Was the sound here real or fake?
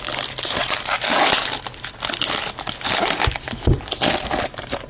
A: real